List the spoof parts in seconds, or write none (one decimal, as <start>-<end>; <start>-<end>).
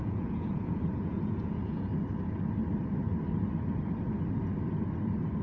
0.0-1.9